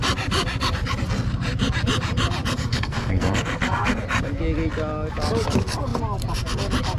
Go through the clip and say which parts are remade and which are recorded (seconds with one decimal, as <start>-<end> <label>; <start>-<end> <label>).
0.0-2.7 recorded; 2.7-4.0 remade; 4.0-7.0 recorded